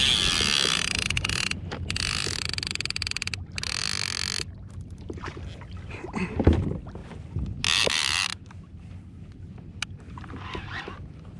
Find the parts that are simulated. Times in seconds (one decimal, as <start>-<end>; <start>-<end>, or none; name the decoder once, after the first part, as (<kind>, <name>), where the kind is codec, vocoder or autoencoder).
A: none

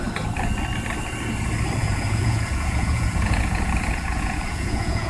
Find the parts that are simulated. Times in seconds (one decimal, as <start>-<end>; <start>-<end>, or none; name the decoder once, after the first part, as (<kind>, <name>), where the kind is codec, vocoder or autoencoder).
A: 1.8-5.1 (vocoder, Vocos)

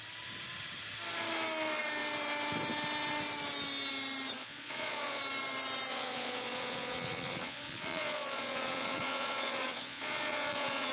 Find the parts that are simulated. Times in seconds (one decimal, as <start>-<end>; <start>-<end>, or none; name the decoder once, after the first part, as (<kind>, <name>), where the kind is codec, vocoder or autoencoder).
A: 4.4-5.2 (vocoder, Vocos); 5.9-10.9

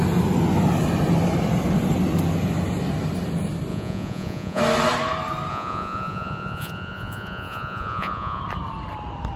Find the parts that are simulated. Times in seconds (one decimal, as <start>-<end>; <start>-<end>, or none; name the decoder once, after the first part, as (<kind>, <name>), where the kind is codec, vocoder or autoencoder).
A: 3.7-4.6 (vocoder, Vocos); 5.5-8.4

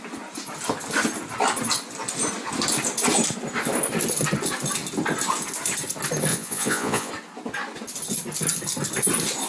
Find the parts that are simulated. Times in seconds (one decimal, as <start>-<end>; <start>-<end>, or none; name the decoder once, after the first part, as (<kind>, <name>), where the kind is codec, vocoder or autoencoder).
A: 6.3-7.1 (vocoder, Vocos)

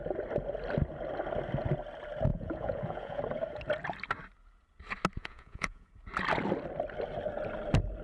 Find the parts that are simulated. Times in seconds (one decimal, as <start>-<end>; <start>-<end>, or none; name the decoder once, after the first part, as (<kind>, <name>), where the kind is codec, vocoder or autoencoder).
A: 2.3-3.2 (vocoder, Vocos); 5.2-5.9